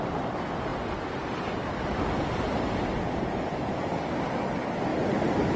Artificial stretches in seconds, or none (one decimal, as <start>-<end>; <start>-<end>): none